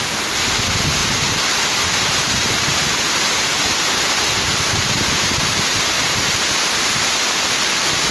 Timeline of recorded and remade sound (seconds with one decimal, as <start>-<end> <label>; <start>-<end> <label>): 0.0-8.1 recorded